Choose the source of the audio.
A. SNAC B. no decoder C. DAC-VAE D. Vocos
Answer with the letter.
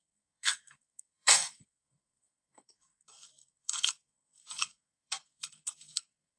A